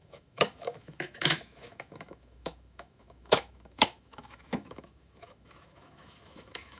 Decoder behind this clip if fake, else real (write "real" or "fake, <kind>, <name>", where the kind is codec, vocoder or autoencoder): fake, autoencoder, DAC-VAE